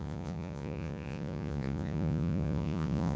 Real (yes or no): no